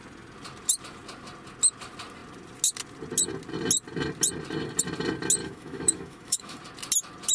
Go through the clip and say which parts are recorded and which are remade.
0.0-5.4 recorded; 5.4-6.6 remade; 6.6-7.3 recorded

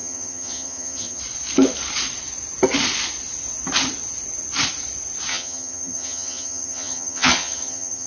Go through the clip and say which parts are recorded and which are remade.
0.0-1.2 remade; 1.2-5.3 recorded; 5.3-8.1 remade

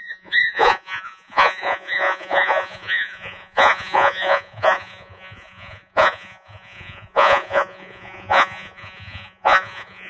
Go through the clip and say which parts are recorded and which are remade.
0.0-10.1 remade

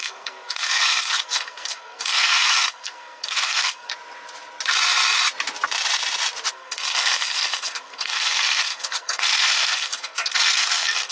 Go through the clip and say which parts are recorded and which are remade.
0.0-3.9 remade; 3.9-6.5 recorded; 6.5-11.1 remade